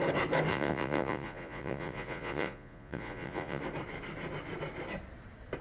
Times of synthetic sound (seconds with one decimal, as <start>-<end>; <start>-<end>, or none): 0.5-3.6